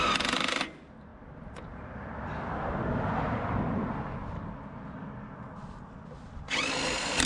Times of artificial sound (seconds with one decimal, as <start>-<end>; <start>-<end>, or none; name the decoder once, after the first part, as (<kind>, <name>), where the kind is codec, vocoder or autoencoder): none